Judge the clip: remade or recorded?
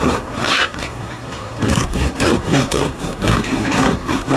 remade